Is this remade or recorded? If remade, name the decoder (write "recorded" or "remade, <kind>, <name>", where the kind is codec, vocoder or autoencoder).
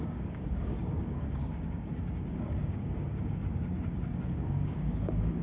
remade, codec, DAC